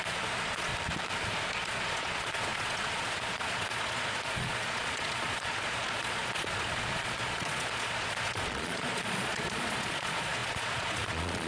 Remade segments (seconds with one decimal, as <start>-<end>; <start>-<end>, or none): 0.0-0.7; 1.5-11.5